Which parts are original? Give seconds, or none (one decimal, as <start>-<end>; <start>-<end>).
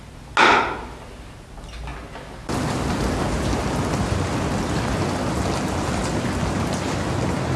0.0-7.6